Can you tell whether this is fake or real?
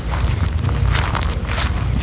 real